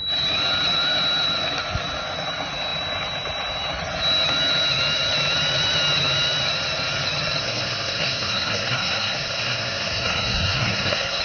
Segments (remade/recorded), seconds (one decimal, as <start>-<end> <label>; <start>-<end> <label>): 0.0-7.4 recorded; 7.4-11.2 remade